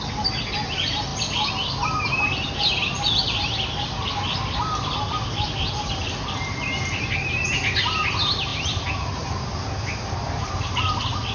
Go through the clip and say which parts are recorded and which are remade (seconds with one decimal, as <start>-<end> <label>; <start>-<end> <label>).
0.0-11.3 recorded